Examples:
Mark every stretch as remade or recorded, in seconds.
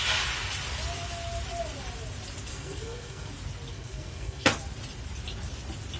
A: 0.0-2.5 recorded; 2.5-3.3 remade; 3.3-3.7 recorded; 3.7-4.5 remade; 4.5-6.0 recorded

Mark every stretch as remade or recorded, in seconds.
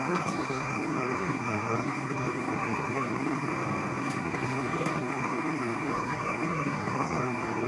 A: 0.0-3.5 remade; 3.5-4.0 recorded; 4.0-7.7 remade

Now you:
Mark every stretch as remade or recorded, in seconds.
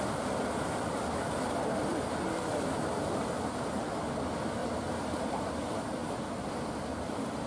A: 0.0-4.6 recorded; 4.6-5.5 remade; 5.5-7.5 recorded